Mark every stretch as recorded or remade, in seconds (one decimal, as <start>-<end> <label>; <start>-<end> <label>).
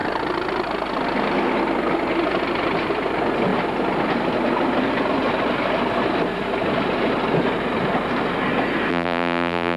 0.0-8.9 recorded; 8.9-9.8 remade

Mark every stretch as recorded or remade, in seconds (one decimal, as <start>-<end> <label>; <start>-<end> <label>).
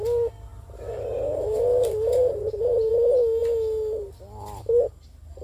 0.0-0.5 recorded; 0.5-2.9 remade; 2.9-5.4 recorded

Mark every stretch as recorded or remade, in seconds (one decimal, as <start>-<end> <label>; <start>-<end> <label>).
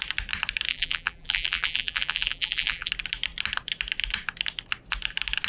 0.0-0.7 recorded; 0.7-2.9 remade; 2.9-5.5 recorded